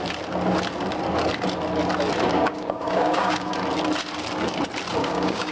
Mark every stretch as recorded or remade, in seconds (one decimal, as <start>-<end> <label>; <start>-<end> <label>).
0.0-2.3 recorded; 2.3-3.5 remade; 3.5-5.0 recorded; 5.0-5.5 remade